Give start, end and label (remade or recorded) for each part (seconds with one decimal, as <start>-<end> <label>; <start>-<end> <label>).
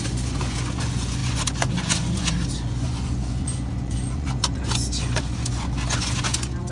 0.0-6.7 remade